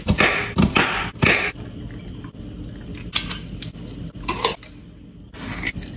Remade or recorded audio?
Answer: recorded